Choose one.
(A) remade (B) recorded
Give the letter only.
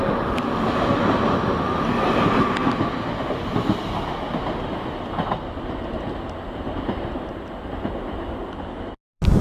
B